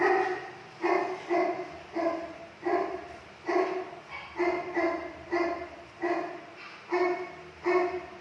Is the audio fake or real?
real